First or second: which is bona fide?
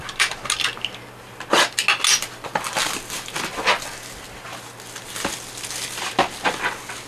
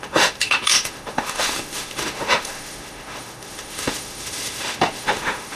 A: first